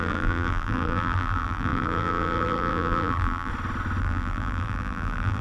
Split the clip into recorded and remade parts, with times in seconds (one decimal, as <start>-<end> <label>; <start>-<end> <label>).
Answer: 0.0-3.5 remade; 3.5-4.0 recorded; 4.0-5.4 remade